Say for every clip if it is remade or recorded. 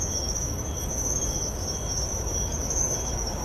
remade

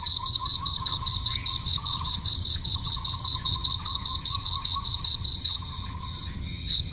remade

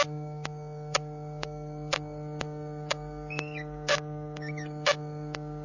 remade